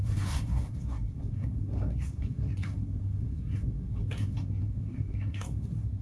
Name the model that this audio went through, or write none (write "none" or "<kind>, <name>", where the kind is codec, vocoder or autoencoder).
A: codec, SNAC